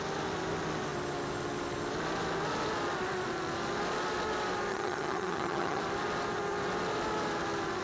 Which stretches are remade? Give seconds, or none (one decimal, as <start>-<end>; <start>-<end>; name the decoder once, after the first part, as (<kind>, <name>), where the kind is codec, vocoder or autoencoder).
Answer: 4.7-5.8 (vocoder, HiFi-GAN)